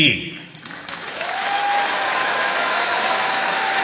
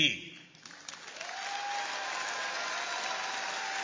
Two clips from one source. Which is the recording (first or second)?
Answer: second